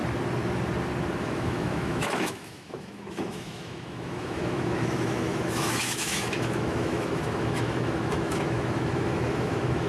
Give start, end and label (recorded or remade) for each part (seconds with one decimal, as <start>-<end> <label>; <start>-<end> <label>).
0.0-1.2 recorded; 1.2-9.9 remade